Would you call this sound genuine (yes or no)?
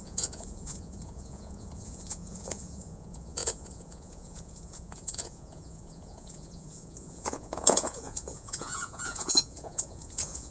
no